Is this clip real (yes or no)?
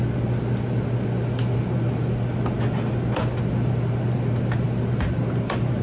yes